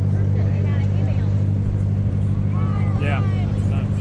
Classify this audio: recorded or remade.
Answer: recorded